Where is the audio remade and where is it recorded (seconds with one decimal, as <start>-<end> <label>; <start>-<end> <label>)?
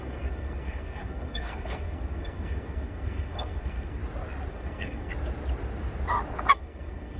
0.0-4.0 remade; 4.0-4.5 recorded; 4.5-5.1 remade; 5.1-6.5 recorded; 6.5-7.2 remade